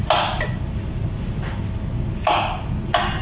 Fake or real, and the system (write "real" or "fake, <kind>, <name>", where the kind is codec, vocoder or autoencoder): real